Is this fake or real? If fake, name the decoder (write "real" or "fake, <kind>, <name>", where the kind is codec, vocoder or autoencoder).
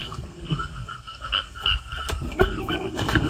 fake, codec, SNAC